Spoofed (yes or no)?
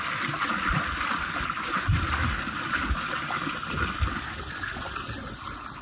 no